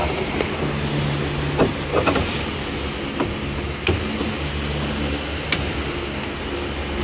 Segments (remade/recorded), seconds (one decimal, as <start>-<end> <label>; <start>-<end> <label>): 0.0-7.0 recorded